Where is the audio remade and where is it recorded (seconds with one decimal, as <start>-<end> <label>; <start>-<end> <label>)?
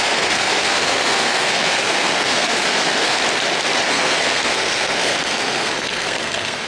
0.0-3.2 remade; 3.2-3.9 recorded; 3.9-6.7 remade